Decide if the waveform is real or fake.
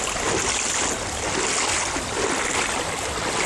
real